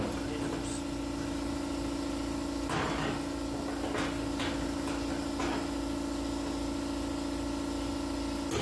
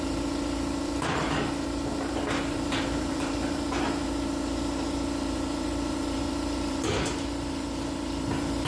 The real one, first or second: first